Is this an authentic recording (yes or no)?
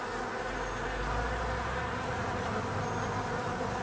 yes